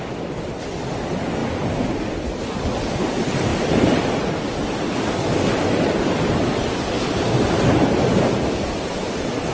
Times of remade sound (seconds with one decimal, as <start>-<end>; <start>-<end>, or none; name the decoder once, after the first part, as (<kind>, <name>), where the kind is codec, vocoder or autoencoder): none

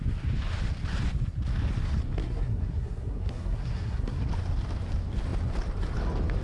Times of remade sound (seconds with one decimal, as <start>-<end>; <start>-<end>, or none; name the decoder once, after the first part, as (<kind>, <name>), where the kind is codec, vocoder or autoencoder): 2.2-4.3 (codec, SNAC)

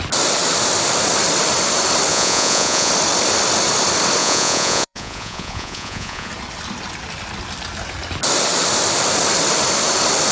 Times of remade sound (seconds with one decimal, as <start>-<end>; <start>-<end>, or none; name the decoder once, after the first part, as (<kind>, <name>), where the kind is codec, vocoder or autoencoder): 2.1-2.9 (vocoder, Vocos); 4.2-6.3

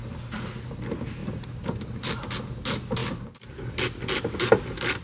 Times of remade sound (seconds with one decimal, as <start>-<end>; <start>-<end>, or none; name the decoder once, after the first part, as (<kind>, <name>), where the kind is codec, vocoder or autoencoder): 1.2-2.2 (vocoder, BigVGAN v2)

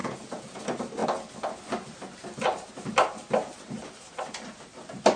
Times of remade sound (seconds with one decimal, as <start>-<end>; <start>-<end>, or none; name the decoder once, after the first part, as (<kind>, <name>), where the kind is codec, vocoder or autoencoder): 0.0-0.6 (vocoder, Vocos)

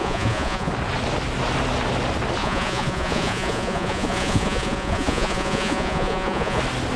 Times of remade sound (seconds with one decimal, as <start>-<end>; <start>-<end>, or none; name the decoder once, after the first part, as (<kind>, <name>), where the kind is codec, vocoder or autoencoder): 0.0-0.7 (vocoder, Vocos); 2.4-6.6

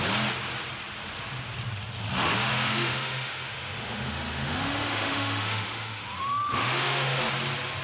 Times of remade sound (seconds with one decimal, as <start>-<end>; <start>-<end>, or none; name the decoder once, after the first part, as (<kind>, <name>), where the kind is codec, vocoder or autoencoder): 2.5-7.2 (autoencoder, DAC-VAE)